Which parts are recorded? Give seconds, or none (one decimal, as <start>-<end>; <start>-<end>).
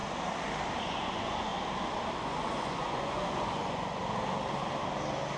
0.0-0.8; 1.5-2.2; 4.0-5.4